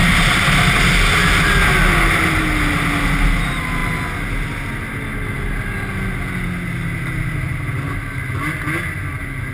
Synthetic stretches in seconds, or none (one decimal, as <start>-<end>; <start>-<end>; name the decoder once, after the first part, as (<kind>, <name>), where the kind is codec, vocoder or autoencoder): none